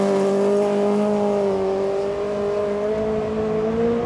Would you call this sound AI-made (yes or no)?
no